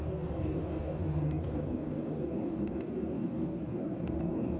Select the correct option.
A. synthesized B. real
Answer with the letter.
A